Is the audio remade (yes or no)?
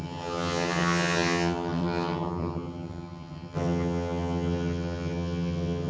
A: yes